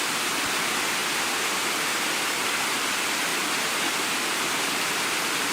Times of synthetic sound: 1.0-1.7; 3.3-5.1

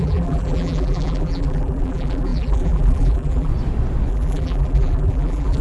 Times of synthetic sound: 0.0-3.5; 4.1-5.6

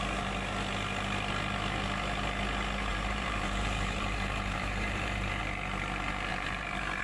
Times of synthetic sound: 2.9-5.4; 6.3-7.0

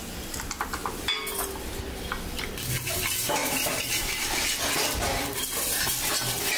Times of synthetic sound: 3.4-4.3